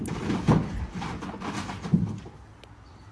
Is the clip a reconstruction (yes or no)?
no